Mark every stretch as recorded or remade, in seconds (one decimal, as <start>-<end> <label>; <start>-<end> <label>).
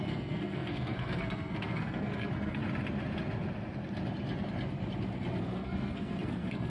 0.0-2.6 remade; 2.6-5.4 recorded; 5.4-6.7 remade